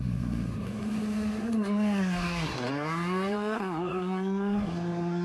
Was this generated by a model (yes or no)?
yes